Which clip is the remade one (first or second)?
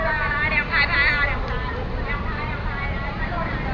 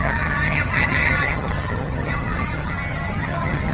second